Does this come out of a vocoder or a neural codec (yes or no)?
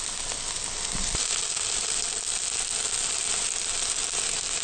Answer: no